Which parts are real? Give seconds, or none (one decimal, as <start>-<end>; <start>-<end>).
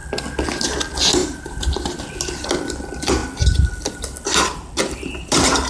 0.0-1.2; 2.0-5.7